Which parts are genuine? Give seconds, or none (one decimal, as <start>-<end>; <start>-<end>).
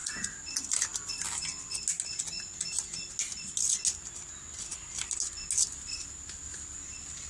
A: 0.0-7.3